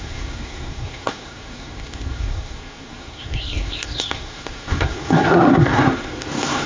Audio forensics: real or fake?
fake